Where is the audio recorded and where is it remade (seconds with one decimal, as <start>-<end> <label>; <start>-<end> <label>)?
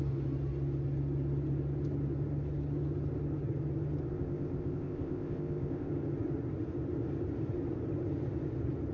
0.0-4.1 recorded; 4.1-5.9 remade; 5.9-8.9 recorded